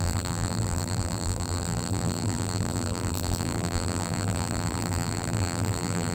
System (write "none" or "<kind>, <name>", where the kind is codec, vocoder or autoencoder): vocoder, BigVGAN v2